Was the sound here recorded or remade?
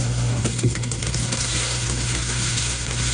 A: remade